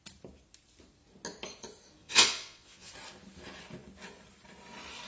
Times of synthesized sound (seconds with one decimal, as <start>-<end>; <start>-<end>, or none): 2.0-2.9